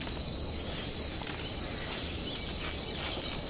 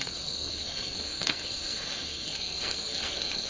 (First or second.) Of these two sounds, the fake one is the second